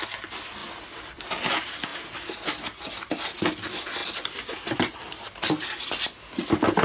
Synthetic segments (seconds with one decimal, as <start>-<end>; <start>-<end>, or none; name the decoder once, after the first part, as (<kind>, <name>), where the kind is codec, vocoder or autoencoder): none